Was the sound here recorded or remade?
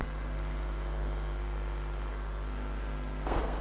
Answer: remade